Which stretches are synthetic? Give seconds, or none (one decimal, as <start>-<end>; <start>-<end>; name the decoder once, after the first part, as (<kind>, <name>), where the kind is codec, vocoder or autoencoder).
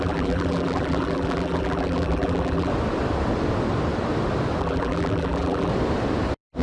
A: 0.0-2.7 (vocoder, BigVGAN v2); 4.6-5.7